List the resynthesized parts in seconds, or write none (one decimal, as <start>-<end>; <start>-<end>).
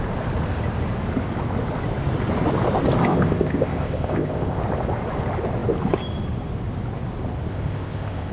3.0-4.6; 7.5-8.3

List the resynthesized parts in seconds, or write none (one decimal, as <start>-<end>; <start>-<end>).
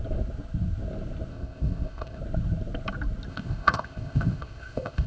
1.3-2.2; 3.3-5.1